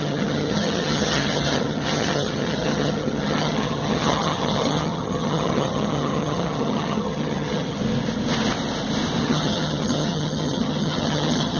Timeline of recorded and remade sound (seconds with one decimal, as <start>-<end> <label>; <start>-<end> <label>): 0.0-7.8 remade; 7.8-9.2 recorded; 9.2-11.6 remade